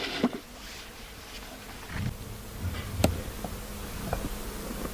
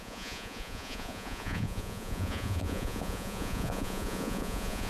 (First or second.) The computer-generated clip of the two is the second